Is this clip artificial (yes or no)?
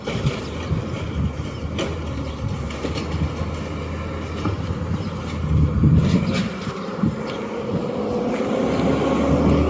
no